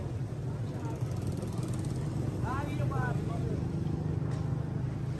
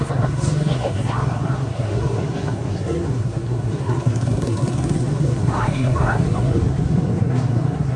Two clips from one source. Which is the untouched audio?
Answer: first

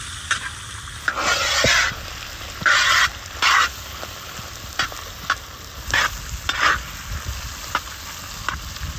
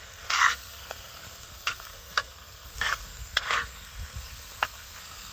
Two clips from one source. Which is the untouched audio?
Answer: first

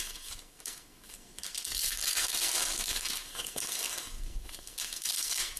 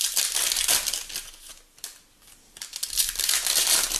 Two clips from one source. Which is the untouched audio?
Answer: second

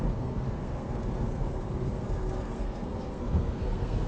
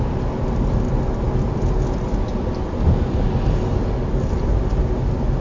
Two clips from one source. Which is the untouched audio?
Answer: second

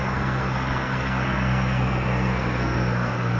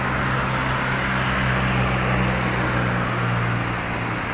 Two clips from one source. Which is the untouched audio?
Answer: second